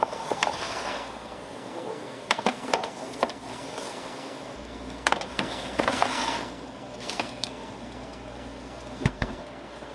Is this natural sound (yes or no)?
no